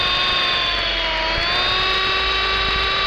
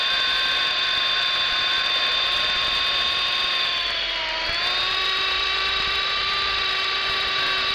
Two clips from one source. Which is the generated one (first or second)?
second